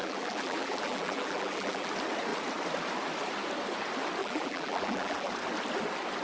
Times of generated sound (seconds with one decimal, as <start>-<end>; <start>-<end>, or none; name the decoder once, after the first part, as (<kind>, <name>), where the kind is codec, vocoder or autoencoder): 0.0-1.9 (vocoder, BigVGAN v2); 4.2-5.3